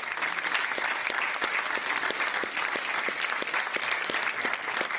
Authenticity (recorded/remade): recorded